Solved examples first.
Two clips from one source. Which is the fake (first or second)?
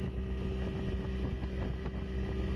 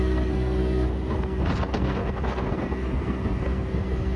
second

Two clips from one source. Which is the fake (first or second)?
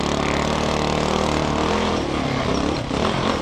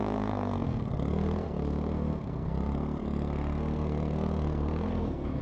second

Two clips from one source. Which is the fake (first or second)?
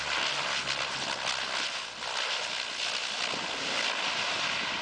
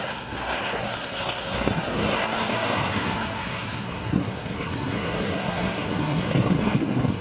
second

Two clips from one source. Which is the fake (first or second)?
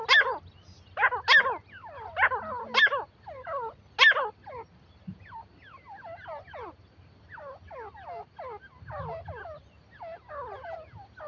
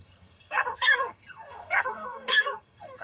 second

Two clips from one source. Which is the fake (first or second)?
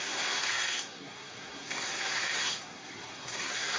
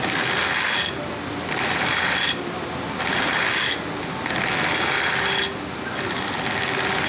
first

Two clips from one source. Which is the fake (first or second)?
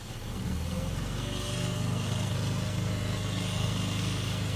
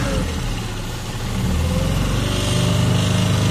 first